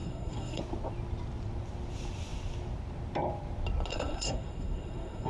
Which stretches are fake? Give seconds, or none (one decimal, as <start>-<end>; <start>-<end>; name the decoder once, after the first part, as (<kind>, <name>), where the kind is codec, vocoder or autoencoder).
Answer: 0.0-0.6 (codec, SNAC); 3.9-5.3